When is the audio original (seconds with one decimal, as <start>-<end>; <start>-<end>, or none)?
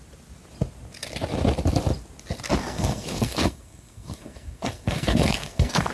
0.0-2.6